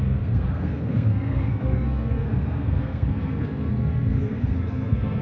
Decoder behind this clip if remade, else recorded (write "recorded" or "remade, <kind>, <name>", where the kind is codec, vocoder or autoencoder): remade, codec, SNAC